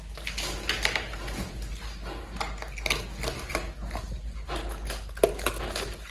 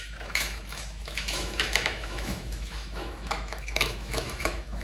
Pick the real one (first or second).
first